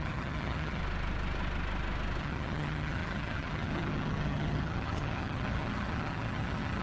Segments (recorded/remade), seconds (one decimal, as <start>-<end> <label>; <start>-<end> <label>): 0.0-0.8 remade; 0.8-2.2 recorded; 2.2-6.8 remade